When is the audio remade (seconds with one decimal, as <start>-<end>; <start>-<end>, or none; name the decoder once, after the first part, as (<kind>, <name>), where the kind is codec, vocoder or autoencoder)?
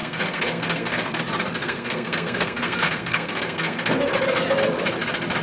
0.0-1.2 (codec, SNAC); 1.6-4.1